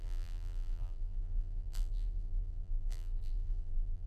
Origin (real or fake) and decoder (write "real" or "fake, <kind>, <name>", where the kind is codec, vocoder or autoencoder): fake, vocoder, BigVGAN v2